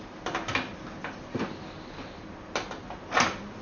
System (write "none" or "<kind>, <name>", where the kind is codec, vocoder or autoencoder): none